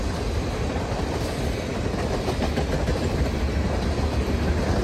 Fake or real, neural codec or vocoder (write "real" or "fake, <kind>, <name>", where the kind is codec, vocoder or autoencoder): real